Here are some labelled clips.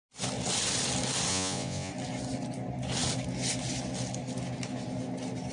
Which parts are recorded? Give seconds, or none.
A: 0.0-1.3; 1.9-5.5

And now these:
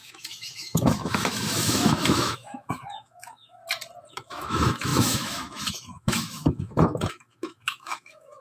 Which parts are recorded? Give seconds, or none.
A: 3.6-4.1